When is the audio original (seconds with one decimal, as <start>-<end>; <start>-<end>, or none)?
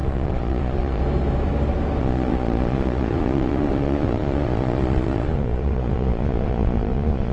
1.0-2.0